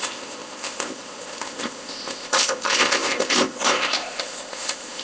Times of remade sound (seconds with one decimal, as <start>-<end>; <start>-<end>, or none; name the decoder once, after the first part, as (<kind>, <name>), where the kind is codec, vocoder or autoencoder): 0.0-5.0 (codec, ZipCodec)